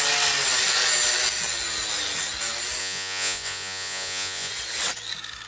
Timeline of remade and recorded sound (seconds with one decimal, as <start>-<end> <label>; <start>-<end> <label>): 0.0-2.8 recorded; 2.8-4.5 remade; 4.5-5.5 recorded

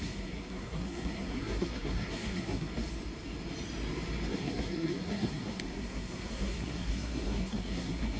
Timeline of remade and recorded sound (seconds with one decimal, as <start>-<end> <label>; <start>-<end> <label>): 0.0-2.7 remade; 2.7-4.3 recorded; 4.3-8.2 remade

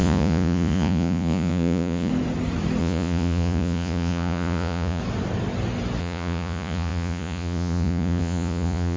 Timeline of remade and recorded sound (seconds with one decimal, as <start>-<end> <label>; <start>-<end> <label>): 0.0-2.1 remade; 2.1-2.8 recorded; 2.8-5.0 remade; 5.0-6.0 recorded; 6.0-9.0 remade

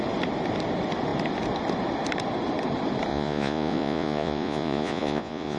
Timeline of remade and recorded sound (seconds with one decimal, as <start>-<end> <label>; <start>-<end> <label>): 0.0-3.1 recorded; 3.1-5.6 remade